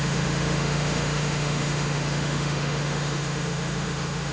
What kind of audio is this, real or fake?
fake